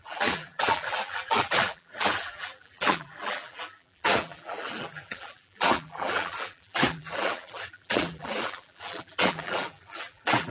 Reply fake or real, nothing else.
fake